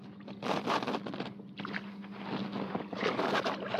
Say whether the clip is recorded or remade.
recorded